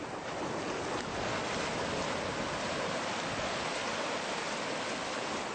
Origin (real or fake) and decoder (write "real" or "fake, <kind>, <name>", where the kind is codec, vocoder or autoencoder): real